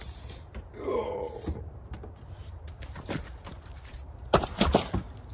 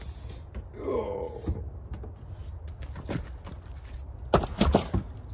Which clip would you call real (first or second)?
second